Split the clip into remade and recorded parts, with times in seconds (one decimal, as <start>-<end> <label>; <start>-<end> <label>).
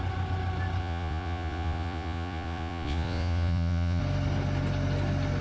0.0-0.8 recorded; 0.8-4.0 remade; 4.0-5.4 recorded